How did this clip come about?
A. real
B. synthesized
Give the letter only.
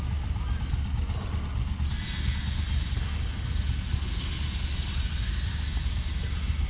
A